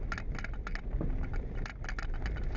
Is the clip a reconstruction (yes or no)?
no